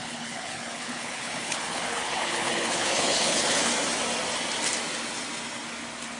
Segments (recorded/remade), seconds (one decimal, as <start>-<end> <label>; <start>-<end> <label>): 0.0-3.7 remade; 3.7-6.2 recorded